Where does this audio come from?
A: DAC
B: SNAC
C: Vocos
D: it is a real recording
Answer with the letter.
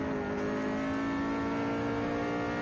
D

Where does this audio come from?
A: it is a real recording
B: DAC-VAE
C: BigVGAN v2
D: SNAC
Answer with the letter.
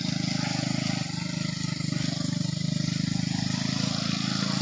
A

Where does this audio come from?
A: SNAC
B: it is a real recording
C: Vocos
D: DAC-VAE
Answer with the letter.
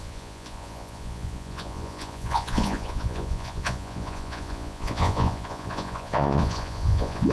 C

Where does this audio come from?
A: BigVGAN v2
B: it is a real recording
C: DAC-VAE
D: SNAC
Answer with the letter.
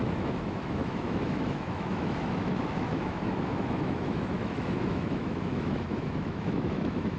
C